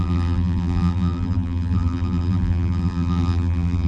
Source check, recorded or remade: remade